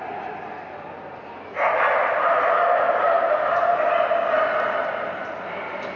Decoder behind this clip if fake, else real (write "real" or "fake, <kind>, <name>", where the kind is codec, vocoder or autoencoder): real